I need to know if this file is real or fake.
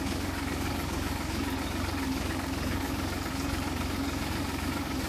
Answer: fake